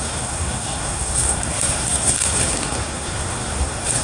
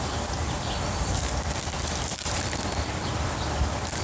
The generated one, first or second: first